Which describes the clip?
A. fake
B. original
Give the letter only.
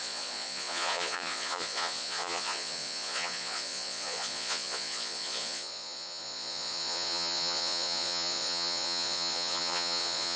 A